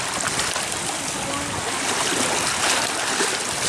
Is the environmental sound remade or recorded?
recorded